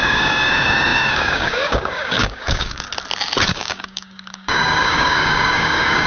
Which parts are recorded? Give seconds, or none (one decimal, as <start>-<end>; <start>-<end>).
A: 2.9-3.5